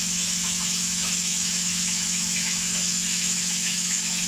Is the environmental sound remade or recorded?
remade